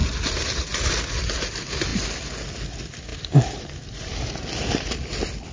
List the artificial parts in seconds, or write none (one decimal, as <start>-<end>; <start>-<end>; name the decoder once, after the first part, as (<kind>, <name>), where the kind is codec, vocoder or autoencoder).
3.1-4.0 (vocoder, BigVGAN v2)